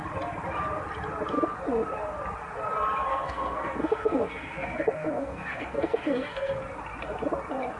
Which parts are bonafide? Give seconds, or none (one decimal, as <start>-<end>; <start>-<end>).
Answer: 0.0-3.1; 6.6-7.8